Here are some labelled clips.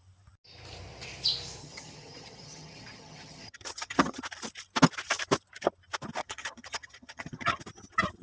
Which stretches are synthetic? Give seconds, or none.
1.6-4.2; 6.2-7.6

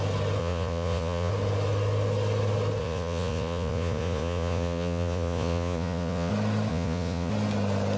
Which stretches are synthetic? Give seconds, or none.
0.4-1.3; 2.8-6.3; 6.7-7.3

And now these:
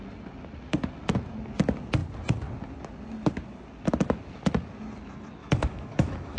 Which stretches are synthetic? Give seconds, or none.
5.4-6.4

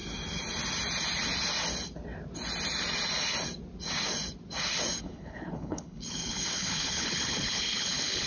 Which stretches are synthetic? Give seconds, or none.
5.0-8.3